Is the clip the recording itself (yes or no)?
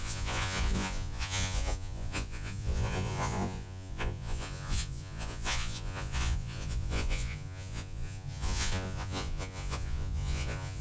no